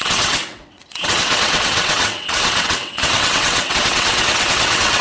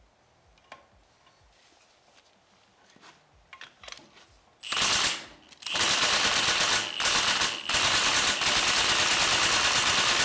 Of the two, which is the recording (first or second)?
second